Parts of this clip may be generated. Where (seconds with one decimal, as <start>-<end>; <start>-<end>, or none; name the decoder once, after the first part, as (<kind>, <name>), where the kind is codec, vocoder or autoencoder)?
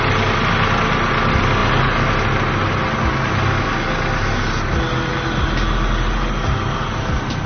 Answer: none